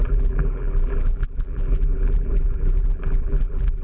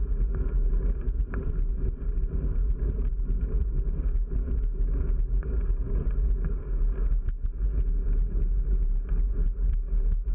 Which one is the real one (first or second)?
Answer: second